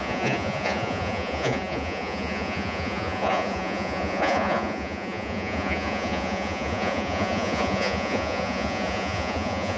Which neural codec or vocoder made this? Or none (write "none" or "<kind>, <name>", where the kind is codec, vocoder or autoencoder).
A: vocoder, Vocos